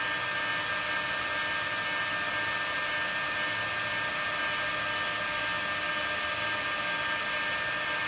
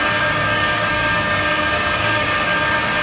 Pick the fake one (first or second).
second